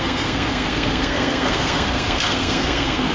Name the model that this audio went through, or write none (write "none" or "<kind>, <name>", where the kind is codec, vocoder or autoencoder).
codec, SNAC